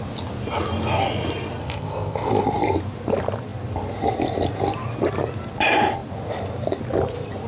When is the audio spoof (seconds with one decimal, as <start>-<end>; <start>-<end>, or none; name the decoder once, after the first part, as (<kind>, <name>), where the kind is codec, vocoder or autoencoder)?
1.6-2.5 (codec, ZipCodec)